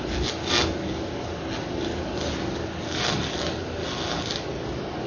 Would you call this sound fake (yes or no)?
no